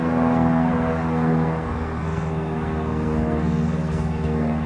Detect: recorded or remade remade